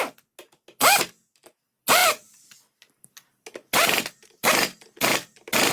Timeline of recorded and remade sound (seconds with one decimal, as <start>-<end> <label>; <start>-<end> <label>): 0.0-2.0 recorded; 2.0-5.7 remade

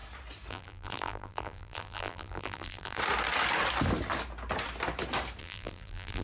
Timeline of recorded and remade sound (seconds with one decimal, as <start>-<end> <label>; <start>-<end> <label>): 0.0-0.5 recorded; 0.5-3.0 remade; 3.0-5.4 recorded; 5.4-6.2 remade